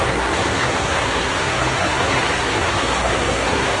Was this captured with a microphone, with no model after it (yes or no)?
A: no